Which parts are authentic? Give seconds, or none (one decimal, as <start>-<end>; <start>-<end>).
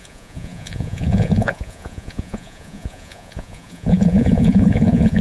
none